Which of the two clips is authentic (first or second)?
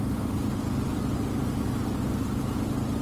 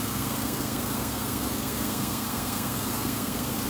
first